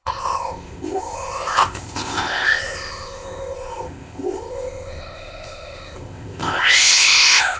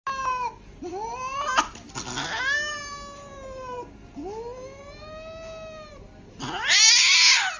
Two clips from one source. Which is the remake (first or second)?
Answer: first